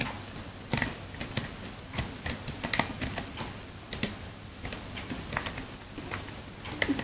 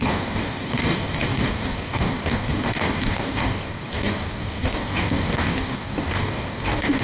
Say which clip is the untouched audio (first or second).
first